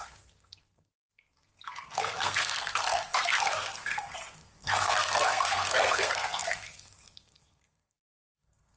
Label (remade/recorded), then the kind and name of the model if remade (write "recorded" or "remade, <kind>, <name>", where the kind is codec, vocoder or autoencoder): remade, codec, SNAC